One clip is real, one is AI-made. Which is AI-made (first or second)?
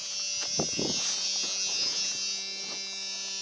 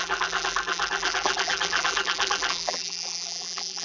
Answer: second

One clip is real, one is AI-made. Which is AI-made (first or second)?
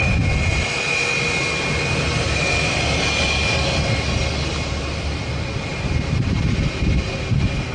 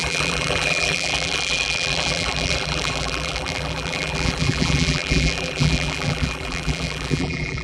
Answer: second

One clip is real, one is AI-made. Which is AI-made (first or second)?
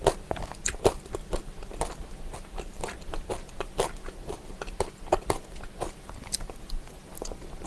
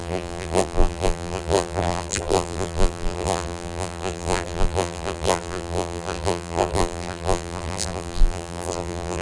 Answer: second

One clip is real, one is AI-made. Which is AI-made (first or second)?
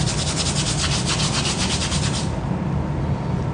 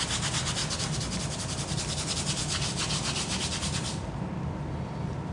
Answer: second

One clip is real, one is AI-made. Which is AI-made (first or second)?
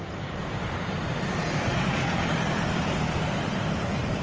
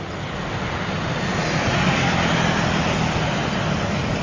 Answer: first